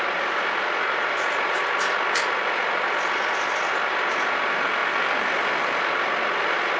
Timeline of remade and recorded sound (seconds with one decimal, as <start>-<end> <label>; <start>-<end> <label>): 0.0-6.8 recorded